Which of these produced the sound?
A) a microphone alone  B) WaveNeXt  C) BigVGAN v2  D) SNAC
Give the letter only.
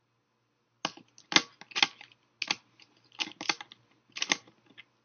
A